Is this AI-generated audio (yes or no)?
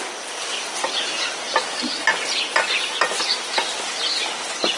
no